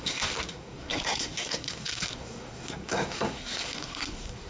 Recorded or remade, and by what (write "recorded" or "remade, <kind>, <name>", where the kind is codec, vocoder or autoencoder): remade, codec, SNAC